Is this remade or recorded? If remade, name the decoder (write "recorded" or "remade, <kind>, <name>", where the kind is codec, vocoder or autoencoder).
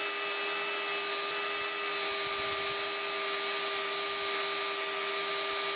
recorded